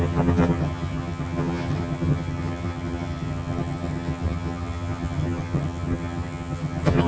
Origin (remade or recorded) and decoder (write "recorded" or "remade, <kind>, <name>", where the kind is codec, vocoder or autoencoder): remade, vocoder, HiFi-GAN